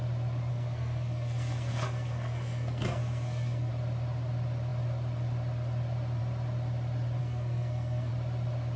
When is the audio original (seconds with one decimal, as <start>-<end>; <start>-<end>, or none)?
0.0-0.5; 3.7-7.2; 8.1-8.8